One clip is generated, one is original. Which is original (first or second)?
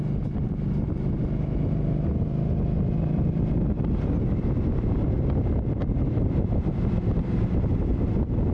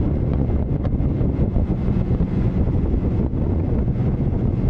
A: first